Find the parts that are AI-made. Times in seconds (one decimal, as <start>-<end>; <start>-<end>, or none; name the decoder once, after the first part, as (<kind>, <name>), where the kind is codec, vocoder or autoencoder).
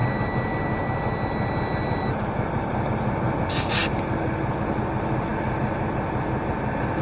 none